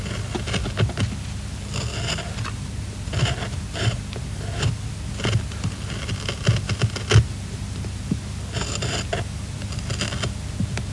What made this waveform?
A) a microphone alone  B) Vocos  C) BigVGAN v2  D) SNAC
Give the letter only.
A